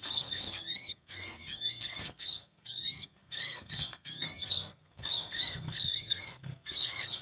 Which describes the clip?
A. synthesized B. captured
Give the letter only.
A